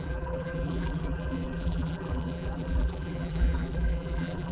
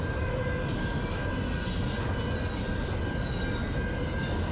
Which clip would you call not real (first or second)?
first